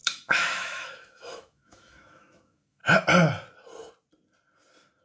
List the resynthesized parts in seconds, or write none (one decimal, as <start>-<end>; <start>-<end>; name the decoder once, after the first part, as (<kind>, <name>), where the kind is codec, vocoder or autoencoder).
0.0-2.8 (autoencoder, DAC-VAE)